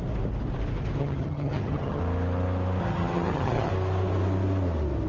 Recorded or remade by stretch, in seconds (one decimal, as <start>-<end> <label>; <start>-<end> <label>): 0.0-1.0 recorded; 1.0-2.0 remade; 2.0-2.8 recorded; 2.8-3.7 remade; 3.7-5.1 recorded